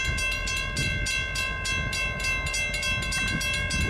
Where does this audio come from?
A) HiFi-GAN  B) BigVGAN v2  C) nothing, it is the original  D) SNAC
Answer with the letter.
C